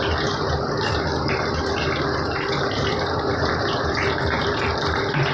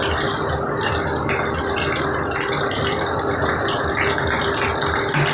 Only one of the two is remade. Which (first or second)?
first